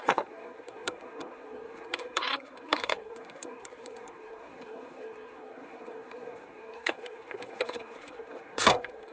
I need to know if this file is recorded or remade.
remade